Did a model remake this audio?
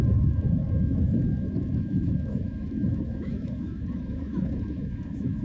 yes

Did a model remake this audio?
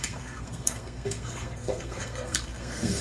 yes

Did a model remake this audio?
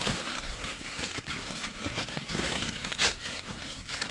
yes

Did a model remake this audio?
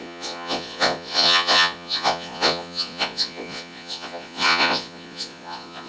yes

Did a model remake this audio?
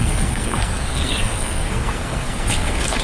yes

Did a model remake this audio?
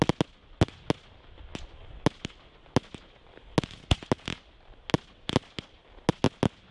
no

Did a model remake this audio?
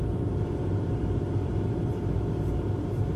yes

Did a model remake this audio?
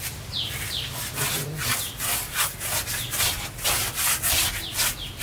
no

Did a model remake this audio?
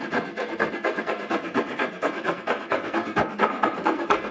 yes